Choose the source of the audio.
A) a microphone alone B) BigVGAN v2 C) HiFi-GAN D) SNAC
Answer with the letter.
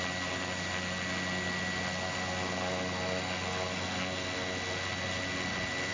A